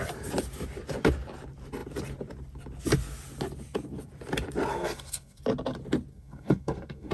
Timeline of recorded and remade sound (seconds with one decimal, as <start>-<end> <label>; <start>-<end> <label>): 0.0-4.7 recorded; 4.7-5.4 remade; 5.4-6.1 recorded; 6.1-7.1 remade